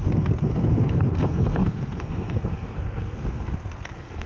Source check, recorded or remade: remade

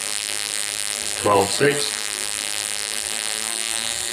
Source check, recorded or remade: remade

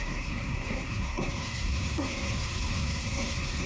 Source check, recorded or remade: remade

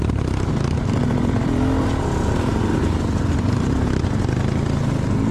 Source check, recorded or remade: recorded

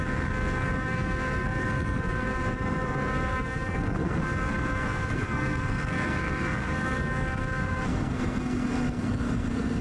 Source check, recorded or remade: remade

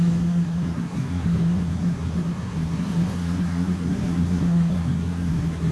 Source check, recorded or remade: remade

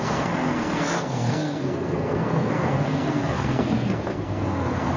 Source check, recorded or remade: remade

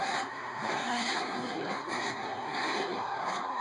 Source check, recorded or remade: remade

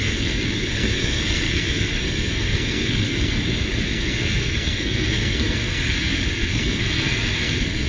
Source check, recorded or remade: remade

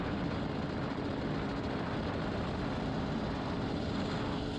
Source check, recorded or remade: recorded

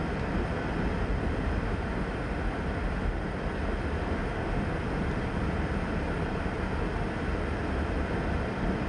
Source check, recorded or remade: recorded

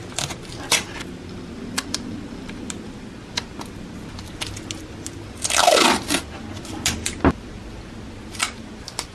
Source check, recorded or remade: recorded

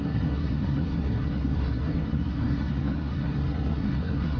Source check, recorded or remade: remade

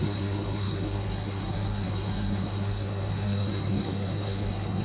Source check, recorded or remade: remade